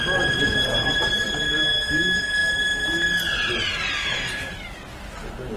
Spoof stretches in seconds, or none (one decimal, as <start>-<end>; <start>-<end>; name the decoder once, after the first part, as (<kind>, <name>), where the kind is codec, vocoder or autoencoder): none